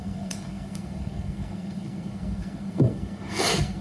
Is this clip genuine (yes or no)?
no